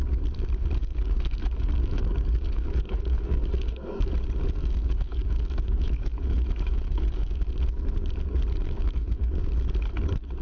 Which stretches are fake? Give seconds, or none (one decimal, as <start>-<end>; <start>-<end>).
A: 0.8-4.1; 4.6-7.5; 8.6-9.5